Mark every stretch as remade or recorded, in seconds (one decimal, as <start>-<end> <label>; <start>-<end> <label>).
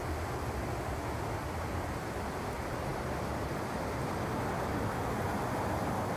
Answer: 0.0-6.2 recorded